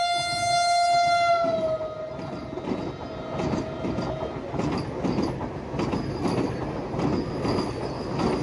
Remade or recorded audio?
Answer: recorded